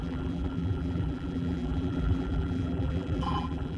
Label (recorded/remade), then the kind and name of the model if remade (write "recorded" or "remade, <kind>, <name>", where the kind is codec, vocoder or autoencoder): remade, vocoder, BigVGAN v2